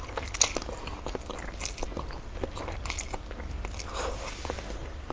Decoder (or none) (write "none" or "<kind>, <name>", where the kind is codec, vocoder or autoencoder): none